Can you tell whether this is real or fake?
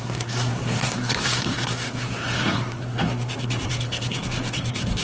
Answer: fake